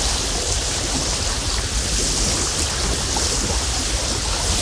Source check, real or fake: real